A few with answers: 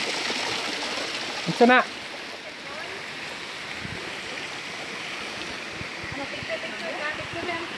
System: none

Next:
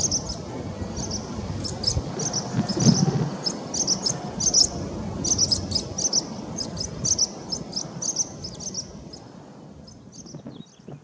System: none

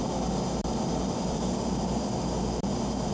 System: vocoder, BigVGAN v2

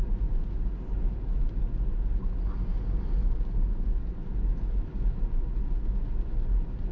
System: none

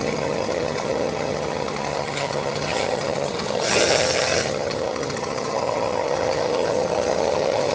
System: vocoder, HiFi-GAN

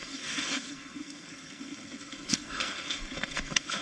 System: codec, SNAC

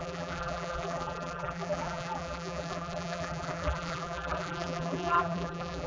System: vocoder, BigVGAN v2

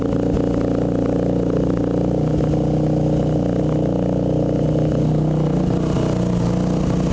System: none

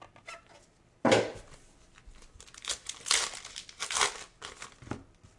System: none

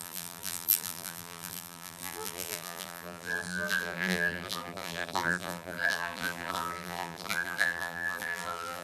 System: vocoder, BigVGAN v2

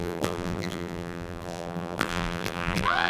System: vocoder, BigVGAN v2